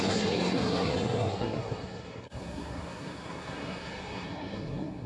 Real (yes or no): no